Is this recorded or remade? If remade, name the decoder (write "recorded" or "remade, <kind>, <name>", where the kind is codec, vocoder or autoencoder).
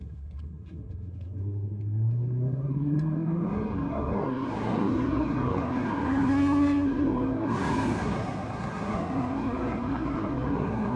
remade, codec, SNAC